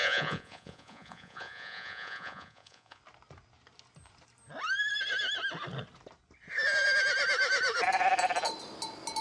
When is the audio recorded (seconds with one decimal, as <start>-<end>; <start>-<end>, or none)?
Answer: 3.0-9.2